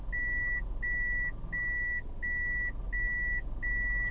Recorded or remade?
recorded